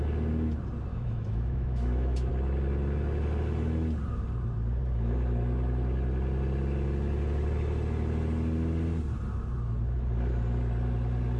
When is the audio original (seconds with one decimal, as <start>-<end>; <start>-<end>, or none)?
0.0-0.9; 2.3-11.4